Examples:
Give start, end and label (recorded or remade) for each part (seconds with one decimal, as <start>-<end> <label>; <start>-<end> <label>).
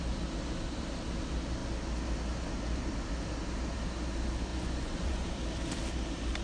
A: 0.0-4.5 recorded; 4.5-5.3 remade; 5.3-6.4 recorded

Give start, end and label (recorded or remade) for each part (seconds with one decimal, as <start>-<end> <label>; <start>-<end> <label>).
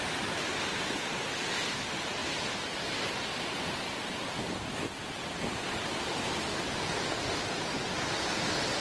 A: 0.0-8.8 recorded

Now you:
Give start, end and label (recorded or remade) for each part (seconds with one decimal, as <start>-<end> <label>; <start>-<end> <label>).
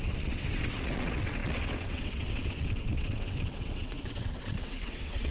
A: 0.0-5.3 remade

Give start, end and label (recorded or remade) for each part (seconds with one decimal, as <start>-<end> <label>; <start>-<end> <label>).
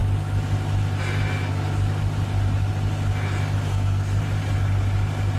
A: 0.0-3.7 recorded; 3.7-4.2 remade; 4.2-5.4 recorded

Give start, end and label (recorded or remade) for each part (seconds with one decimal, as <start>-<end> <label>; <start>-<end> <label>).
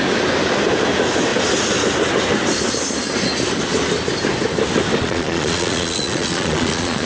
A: 0.0-5.0 recorded; 5.0-7.1 remade